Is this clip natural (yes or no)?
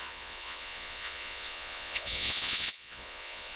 no